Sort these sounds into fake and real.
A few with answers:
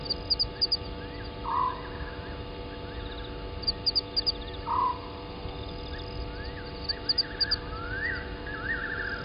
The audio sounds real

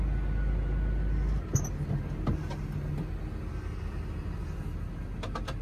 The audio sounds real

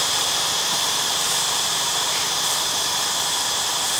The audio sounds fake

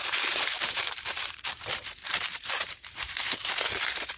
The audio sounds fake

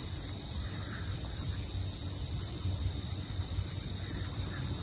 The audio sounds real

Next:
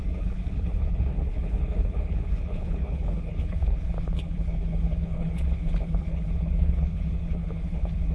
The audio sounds fake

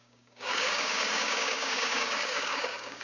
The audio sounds fake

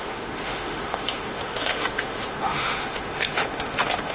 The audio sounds fake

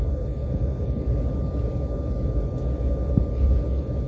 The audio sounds real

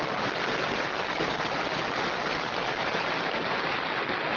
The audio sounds real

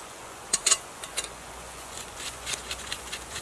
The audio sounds fake